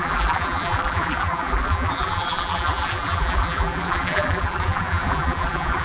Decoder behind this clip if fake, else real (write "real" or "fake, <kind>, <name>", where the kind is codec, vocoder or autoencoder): fake, vocoder, BigVGAN v2